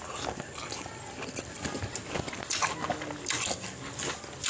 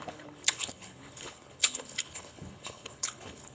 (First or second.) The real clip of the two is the first